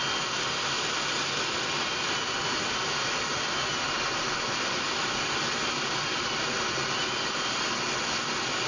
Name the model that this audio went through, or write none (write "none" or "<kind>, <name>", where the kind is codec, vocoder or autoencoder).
none